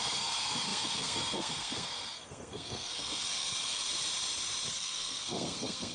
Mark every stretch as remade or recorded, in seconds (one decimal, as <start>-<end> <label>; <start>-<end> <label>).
0.0-3.8 remade; 3.8-4.7 recorded; 4.7-5.9 remade